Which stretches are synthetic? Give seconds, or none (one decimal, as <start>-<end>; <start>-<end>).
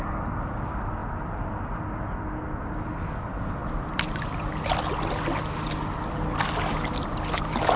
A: none